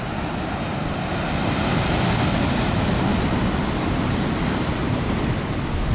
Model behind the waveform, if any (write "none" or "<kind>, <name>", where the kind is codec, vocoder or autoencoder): none